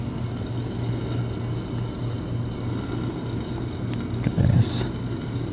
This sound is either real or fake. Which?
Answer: real